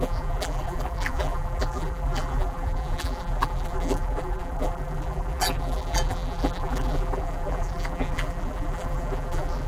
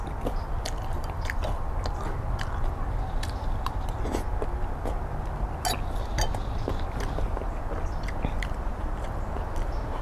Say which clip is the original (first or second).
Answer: second